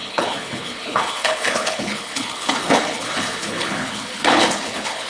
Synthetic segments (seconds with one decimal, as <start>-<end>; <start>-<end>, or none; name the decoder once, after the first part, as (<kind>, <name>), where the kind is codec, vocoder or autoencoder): 0.0-5.1 (codec, HILCodec)